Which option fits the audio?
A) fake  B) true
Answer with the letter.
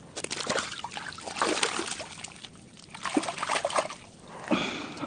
B